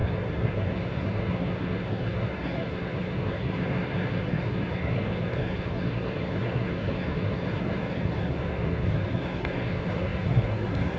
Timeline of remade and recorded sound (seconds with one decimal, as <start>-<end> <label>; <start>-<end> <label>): 0.0-11.0 remade